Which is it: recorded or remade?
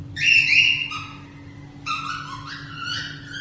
recorded